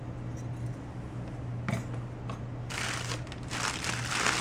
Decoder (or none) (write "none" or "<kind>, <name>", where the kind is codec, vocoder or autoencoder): none